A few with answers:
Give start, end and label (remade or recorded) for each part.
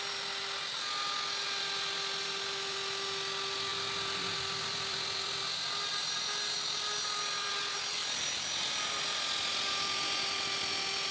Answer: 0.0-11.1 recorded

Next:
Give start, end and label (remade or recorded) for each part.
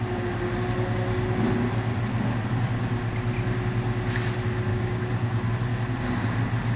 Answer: 0.0-4.7 recorded; 4.7-5.5 remade; 5.5-6.8 recorded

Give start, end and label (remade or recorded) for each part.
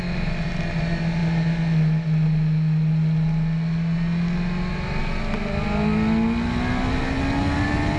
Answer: 0.0-8.0 recorded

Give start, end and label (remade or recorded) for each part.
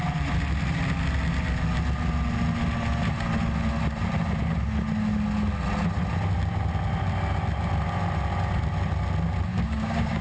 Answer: 0.0-9.5 recorded; 9.5-10.2 remade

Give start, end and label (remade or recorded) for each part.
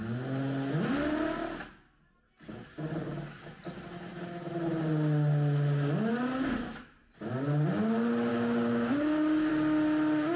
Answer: 0.0-8.3 recorded; 8.3-9.5 remade; 9.5-10.4 recorded